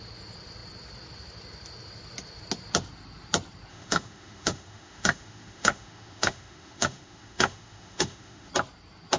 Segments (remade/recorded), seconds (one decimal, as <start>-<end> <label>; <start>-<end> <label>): 0.0-3.7 recorded; 3.7-8.5 remade; 8.5-9.2 recorded